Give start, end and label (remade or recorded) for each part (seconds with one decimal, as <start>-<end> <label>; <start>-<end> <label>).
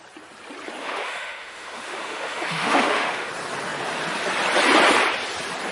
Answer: 0.0-0.8 recorded; 0.8-3.3 remade; 3.3-5.7 recorded